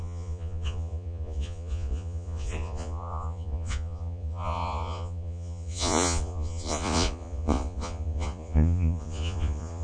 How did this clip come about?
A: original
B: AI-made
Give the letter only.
B